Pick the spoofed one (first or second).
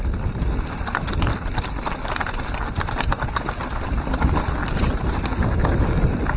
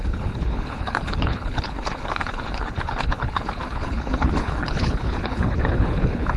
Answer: second